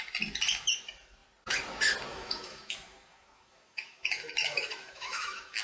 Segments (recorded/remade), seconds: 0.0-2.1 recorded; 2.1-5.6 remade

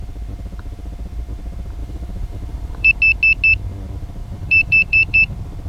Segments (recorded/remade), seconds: 0.0-1.8 recorded; 1.8-2.9 remade; 2.9-4.2 recorded; 4.2-5.3 remade; 5.3-5.7 recorded

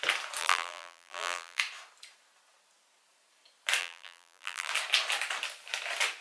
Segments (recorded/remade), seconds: 0.0-0.4 recorded; 0.4-1.6 remade; 1.6-3.8 recorded; 3.8-4.7 remade; 4.7-6.2 recorded

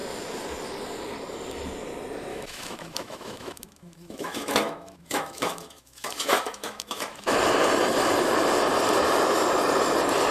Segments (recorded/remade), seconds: 0.0-2.3 recorded; 2.3-7.4 remade; 7.4-10.3 recorded

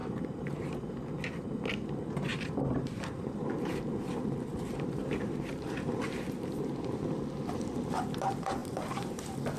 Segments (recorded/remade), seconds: 0.0-0.9 remade; 0.9-2.3 recorded; 2.3-3.4 remade; 3.4-4.5 recorded; 4.5-6.5 remade; 6.5-8.6 recorded; 8.6-9.2 remade; 9.2-9.6 recorded

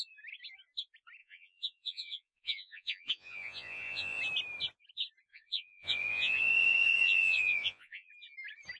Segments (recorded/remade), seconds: 0.0-1.2 recorded; 1.2-4.2 remade; 4.2-5.3 recorded; 5.3-8.1 remade; 8.1-8.8 recorded

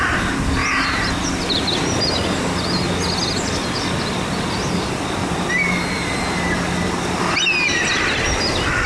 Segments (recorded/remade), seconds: 0.0-8.9 recorded

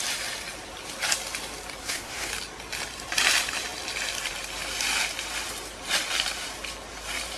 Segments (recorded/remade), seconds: 0.0-1.8 recorded; 1.8-2.3 remade; 2.3-7.4 recorded